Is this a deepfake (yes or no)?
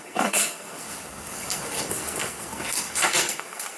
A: yes